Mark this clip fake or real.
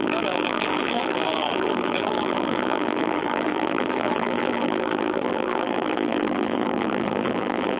fake